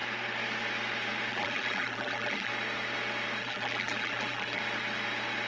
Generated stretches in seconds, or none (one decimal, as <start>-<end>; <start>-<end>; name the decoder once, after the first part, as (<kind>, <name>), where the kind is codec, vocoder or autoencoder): 1.3-2.5 (vocoder, BigVGAN v2); 3.4-4.6